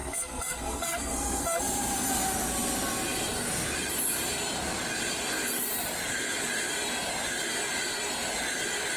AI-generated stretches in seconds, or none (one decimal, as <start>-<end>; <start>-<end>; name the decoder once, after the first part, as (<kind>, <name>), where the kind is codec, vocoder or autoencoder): 0.0-1.6 (codec, SNAC)

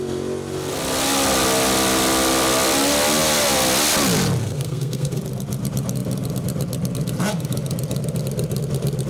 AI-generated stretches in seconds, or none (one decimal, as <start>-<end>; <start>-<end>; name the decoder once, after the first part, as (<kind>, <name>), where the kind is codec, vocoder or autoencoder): 4.4-5.2 (codec, SNAC)

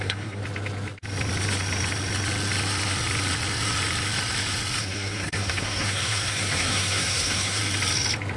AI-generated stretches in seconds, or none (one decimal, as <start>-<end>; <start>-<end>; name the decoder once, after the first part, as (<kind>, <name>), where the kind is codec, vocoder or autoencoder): 0.0-0.4 (codec, SNAC); 4.8-7.6

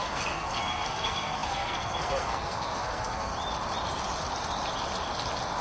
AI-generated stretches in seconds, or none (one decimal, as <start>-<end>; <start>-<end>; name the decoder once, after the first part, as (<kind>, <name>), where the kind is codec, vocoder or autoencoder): 0.0-3.3 (codec, SNAC)

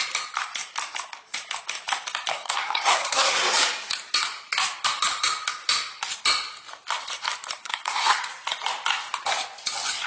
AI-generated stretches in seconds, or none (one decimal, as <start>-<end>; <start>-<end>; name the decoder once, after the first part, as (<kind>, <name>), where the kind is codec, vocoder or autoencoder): 2.3-3.4 (codec, SNAC); 7.6-8.2

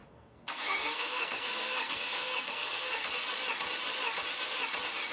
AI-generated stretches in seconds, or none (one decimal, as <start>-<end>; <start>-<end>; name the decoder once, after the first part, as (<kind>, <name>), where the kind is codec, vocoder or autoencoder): 0.0-3.1 (codec, SNAC)

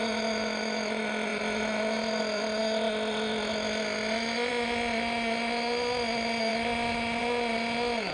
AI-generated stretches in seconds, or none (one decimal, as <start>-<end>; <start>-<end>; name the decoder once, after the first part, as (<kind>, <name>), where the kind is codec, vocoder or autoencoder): none

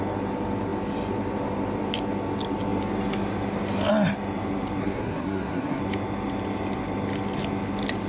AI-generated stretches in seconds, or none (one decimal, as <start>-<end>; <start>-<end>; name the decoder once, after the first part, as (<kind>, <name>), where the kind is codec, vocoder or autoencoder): 4.8-5.8 (codec, SNAC)